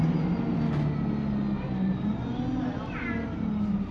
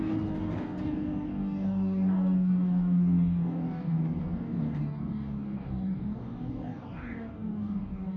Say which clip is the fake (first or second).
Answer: second